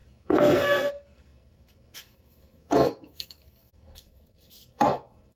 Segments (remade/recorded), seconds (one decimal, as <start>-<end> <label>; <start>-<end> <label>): 0.0-5.4 remade